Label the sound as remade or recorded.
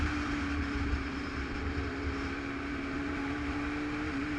remade